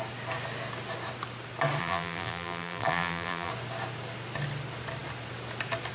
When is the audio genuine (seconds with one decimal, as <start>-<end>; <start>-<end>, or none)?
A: 0.0-1.8; 3.5-5.9